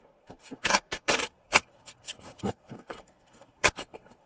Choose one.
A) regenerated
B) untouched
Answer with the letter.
A